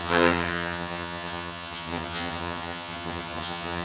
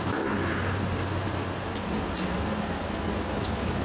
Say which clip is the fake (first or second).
first